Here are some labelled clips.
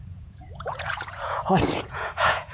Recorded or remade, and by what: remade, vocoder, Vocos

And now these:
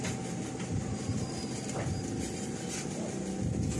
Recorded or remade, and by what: recorded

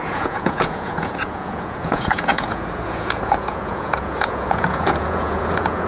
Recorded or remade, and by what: remade, vocoder, Vocos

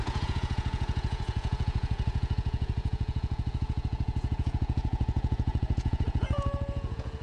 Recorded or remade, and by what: remade, vocoder, Vocos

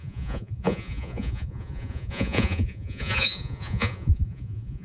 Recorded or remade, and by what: remade, vocoder, Vocos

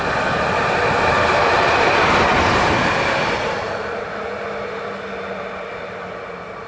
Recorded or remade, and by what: recorded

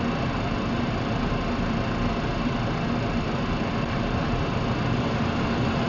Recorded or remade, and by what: recorded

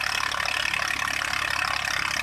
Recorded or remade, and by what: recorded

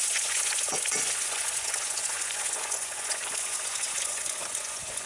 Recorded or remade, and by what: remade, vocoder, Vocos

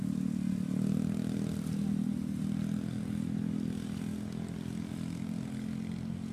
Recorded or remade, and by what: recorded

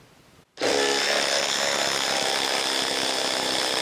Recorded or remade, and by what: recorded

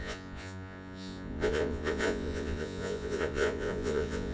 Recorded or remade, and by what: remade, vocoder, Vocos